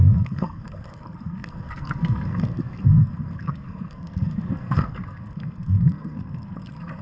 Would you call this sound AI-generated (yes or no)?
yes